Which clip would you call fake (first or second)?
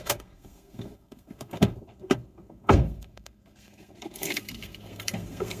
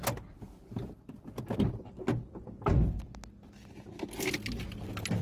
first